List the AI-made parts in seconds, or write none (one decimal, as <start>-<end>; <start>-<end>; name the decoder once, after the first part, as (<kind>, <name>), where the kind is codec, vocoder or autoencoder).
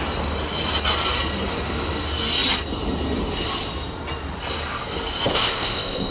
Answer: 5.3-6.1 (codec, ZipCodec)